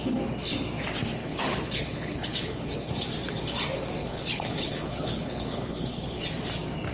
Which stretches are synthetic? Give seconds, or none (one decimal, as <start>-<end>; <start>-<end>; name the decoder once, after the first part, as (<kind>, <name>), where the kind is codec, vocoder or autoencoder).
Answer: 1.2-2.9 (codec, HILCodec); 4.0-6.3